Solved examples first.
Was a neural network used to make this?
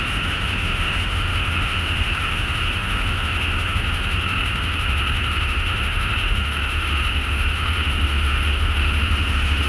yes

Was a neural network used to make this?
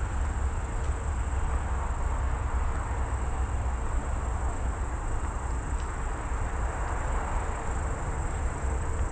no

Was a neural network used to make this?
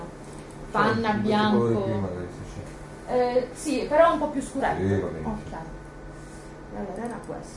no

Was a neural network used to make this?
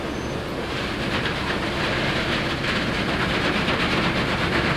no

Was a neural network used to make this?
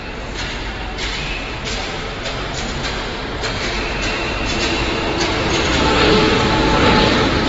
yes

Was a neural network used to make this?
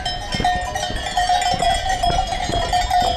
no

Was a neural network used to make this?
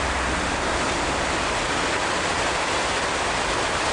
no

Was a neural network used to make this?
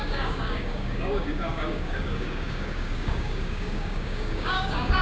yes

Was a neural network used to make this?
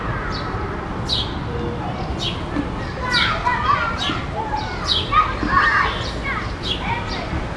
no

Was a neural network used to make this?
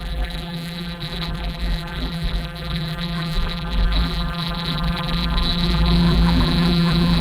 yes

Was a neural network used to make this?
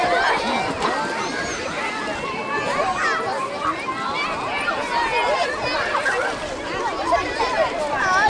no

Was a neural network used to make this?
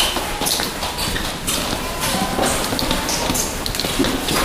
no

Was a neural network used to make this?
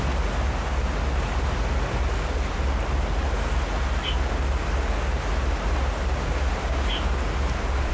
no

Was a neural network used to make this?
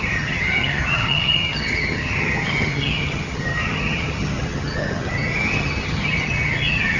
yes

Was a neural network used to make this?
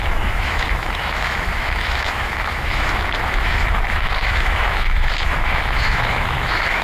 yes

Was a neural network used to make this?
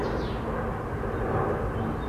no